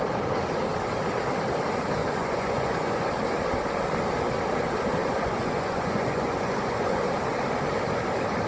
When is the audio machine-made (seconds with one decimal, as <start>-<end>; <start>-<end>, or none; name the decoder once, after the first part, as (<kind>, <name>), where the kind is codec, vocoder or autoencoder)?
2.0-3.1 (vocoder, Vocos); 5.0-7.1